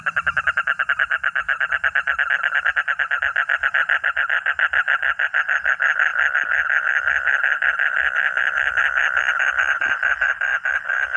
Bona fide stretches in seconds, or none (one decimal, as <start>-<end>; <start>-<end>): 10.5-11.2